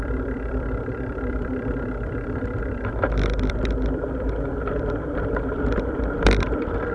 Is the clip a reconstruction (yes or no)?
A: yes